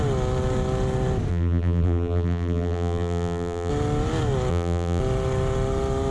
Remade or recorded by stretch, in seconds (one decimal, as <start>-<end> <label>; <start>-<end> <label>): 0.0-1.3 recorded; 1.3-3.7 remade; 3.7-4.5 recorded; 4.5-5.0 remade; 5.0-6.1 recorded